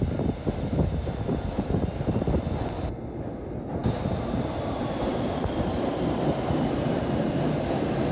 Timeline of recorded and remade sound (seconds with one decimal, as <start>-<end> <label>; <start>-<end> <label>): 0.0-8.1 recorded

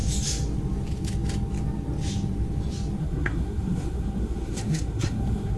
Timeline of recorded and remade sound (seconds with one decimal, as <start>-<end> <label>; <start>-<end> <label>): 0.0-3.0 recorded; 3.0-5.6 remade

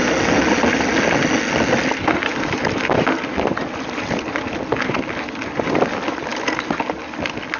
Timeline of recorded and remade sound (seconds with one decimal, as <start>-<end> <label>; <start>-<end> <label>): 0.0-7.6 recorded

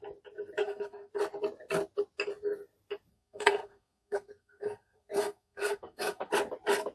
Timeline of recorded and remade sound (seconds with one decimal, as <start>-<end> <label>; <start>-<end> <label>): 0.0-0.6 recorded; 0.6-1.1 remade; 1.1-3.1 recorded; 3.1-6.3 remade; 6.3-6.9 recorded

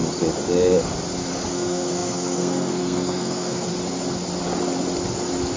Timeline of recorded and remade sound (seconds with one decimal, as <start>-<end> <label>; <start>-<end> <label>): 0.0-1.5 recorded; 1.5-3.7 remade; 3.7-5.6 recorded

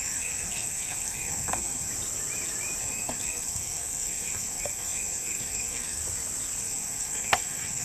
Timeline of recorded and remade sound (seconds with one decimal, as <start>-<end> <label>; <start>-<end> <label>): 0.0-1.9 remade; 1.9-2.8 recorded; 2.8-6.0 remade; 6.0-6.6 recorded; 6.6-7.8 remade

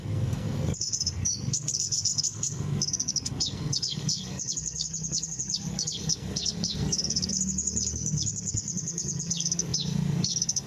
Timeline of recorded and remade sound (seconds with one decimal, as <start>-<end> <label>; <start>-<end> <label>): 0.0-10.7 remade

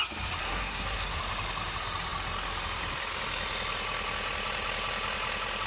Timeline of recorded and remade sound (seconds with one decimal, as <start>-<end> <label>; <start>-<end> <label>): 0.0-0.4 recorded; 0.4-1.2 remade; 1.2-5.7 recorded